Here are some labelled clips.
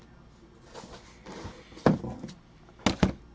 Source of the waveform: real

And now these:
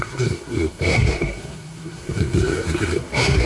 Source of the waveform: fake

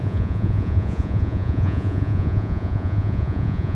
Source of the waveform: fake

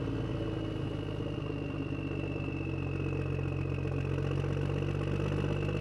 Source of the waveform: real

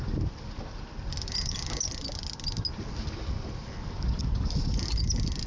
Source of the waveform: real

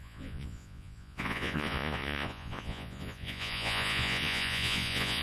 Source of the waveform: fake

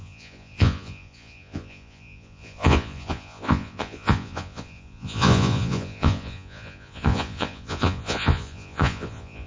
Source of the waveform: fake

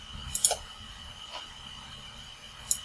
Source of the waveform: real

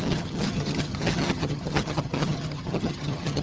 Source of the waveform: fake